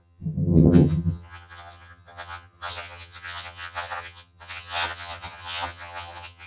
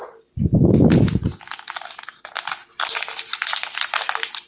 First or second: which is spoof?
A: first